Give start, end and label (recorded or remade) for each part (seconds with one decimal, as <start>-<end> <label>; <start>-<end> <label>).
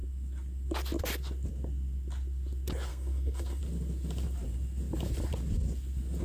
0.0-2.9 recorded; 2.9-3.6 remade; 3.6-6.2 recorded